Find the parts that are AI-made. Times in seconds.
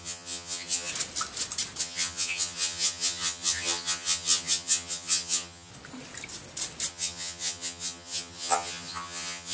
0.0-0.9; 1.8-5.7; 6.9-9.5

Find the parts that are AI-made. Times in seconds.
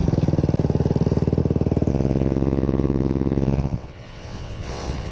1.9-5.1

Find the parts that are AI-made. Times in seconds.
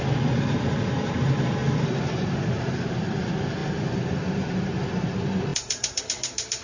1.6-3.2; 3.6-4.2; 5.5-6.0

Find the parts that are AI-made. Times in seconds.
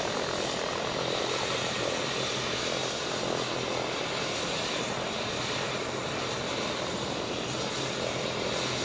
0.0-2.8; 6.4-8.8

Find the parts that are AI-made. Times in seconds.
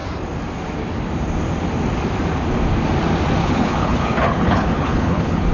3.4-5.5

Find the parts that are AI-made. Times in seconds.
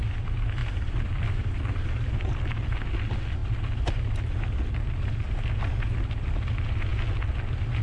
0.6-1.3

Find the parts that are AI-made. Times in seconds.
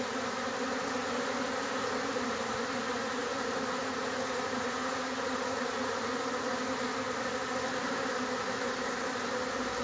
3.8-6.0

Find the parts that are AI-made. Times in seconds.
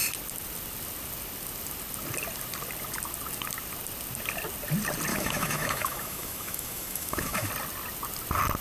5.1-7.5